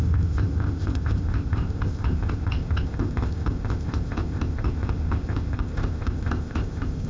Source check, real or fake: fake